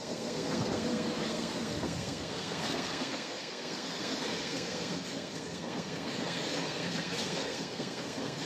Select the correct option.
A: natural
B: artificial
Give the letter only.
B